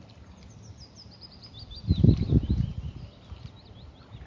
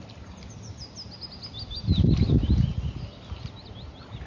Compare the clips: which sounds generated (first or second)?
first